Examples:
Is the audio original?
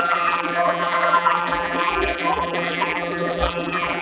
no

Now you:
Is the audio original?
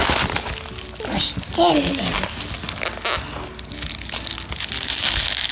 yes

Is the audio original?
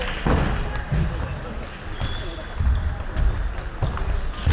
yes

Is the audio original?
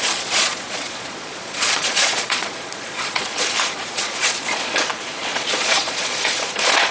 no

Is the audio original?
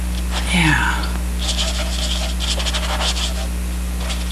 yes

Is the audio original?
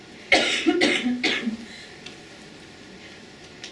yes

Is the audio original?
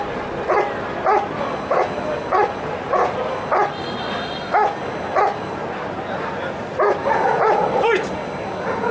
yes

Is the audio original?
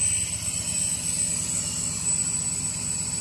yes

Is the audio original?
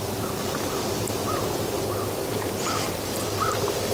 yes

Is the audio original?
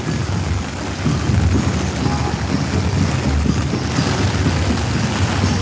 yes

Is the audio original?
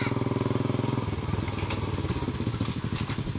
yes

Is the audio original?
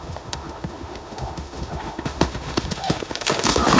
no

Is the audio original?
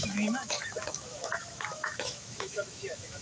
no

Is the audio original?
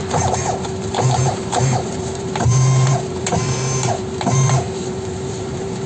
no